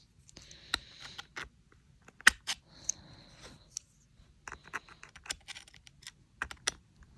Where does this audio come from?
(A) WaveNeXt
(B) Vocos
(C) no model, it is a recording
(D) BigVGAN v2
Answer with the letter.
C